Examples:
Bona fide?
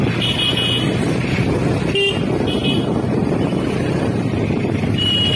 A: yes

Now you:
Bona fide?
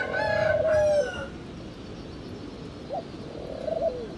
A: yes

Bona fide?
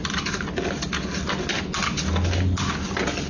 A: yes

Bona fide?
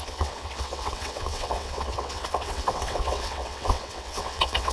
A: no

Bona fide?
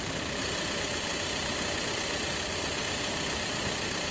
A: no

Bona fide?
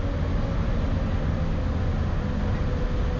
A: yes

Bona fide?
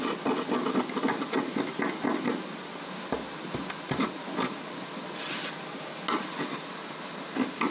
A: yes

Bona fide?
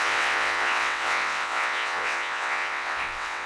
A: no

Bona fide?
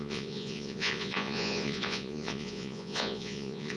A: no